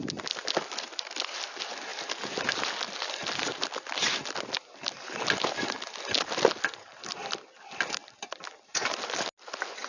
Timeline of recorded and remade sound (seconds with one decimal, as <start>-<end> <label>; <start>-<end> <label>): 0.0-9.9 recorded